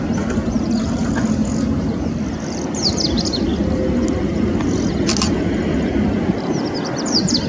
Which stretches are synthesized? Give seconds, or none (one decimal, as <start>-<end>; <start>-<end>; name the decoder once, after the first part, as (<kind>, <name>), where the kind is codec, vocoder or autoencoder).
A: 0.0-3.5 (vocoder, BigVGAN v2); 6.4-7.5